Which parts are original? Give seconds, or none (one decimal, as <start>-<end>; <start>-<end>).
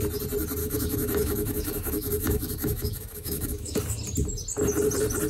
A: 0.0-0.6; 3.8-5.3